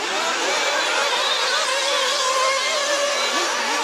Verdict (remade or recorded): recorded